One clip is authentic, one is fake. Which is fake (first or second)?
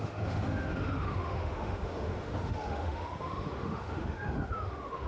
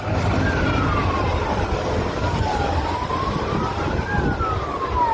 first